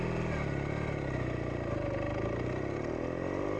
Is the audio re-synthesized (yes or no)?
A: no